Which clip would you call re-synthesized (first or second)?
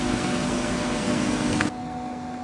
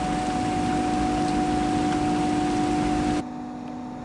first